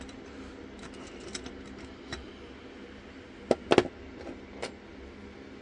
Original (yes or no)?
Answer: yes